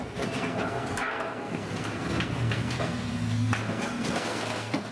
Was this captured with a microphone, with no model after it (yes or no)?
no